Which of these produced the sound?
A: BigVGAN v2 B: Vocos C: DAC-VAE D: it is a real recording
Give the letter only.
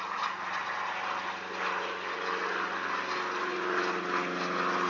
D